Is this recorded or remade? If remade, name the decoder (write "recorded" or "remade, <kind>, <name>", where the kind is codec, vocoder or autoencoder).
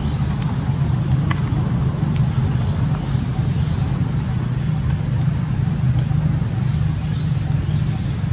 recorded